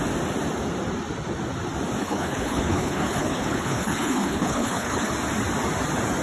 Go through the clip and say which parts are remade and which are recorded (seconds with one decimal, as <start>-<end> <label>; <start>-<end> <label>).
0.0-2.0 recorded; 2.0-5.1 remade; 5.1-6.2 recorded